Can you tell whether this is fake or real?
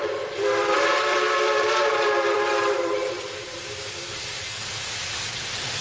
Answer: fake